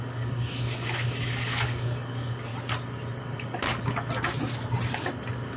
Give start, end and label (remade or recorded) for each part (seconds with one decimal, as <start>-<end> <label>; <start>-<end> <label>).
0.0-2.5 remade; 2.5-3.2 recorded; 3.2-3.7 remade; 3.7-5.6 recorded